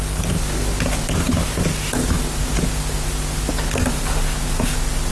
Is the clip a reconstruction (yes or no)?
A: no